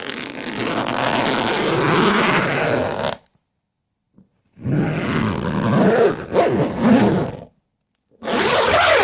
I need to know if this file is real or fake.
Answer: real